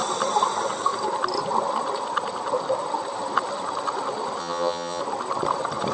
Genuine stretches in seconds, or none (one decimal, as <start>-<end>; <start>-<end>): 0.0-4.4; 5.0-5.9